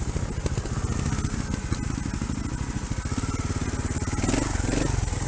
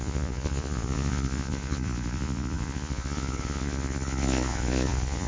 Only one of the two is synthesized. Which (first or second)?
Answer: second